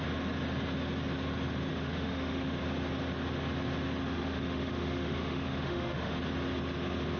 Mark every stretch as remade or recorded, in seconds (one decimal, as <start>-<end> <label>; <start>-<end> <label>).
0.0-1.7 recorded; 1.7-2.6 remade; 2.6-4.0 recorded; 4.0-6.2 remade; 6.2-7.2 recorded